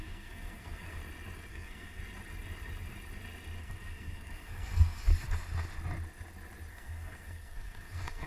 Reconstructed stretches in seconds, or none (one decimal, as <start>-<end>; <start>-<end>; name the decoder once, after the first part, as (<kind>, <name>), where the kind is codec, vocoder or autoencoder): 0.0-1.0 (codec, SNAC); 1.5-2.0; 3.6-5.1; 6.7-8.3